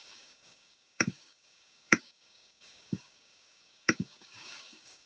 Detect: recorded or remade remade